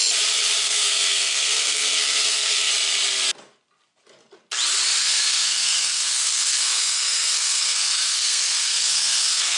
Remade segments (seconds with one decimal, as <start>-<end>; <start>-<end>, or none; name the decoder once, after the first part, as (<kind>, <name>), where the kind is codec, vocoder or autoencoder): 0.6-2.7 (codec, SNAC); 5.0-9.6